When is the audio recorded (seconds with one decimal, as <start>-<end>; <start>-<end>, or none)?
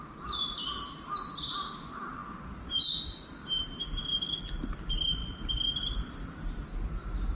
0.0-7.3